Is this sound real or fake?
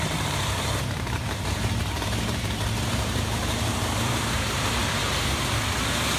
fake